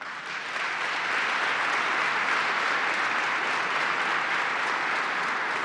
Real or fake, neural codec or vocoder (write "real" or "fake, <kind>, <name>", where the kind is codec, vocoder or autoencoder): real